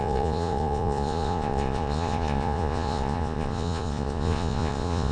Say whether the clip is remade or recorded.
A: remade